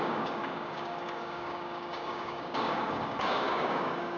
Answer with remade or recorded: remade